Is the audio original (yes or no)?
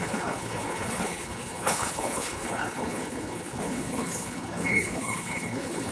no